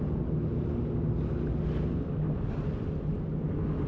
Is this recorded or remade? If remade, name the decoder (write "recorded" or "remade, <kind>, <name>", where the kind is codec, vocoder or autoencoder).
recorded